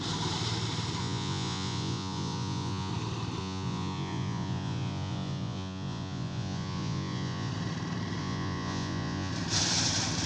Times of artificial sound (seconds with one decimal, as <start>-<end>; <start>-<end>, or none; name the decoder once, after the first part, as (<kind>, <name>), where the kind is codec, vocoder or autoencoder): 1.0-2.9 (vocoder, Vocos); 3.4-7.5; 8.2-9.3